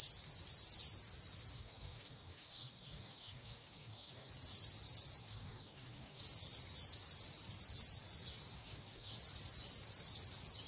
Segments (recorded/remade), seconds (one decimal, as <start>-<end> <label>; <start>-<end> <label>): 0.0-1.5 recorded; 1.5-4.3 remade; 4.3-5.2 recorded; 5.2-6.2 remade; 6.2-8.5 recorded; 8.5-9.1 remade; 9.1-10.7 recorded